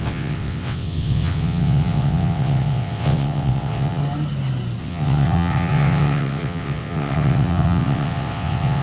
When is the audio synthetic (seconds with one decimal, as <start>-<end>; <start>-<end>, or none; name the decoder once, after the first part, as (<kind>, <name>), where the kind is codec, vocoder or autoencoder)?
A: 0.0-4.0 (vocoder, WaveNeXt); 4.8-8.8